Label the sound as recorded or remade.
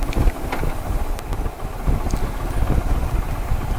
recorded